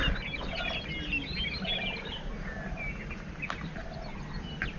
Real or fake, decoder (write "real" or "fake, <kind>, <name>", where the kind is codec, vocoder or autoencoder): real